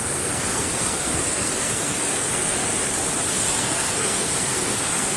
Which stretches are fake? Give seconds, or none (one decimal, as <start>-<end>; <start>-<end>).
0.0-2.7; 3.3-5.2